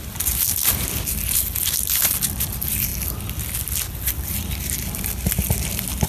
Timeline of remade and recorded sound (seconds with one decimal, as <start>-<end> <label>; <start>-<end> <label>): 0.0-6.1 recorded